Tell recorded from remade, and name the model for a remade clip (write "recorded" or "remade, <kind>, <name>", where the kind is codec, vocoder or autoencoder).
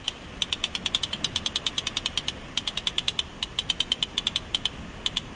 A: recorded